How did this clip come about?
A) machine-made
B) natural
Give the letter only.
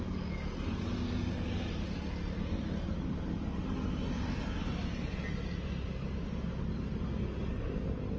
B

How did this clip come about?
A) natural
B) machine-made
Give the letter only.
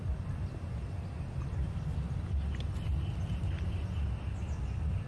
A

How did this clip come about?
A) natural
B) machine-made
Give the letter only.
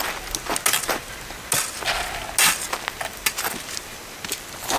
A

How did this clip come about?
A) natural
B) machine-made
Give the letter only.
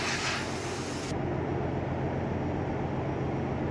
A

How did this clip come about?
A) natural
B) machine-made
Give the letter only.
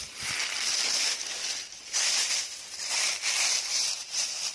A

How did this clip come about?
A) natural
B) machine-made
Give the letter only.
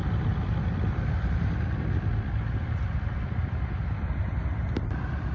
A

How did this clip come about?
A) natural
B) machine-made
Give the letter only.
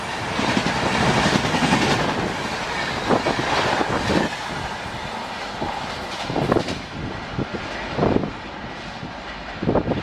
A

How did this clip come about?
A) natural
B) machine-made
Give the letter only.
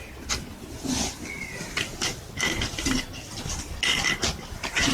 A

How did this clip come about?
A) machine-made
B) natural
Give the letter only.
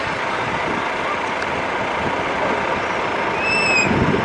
B